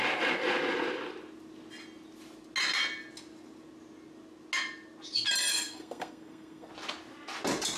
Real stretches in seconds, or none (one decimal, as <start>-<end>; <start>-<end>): 0.0-5.5; 6.7-7.8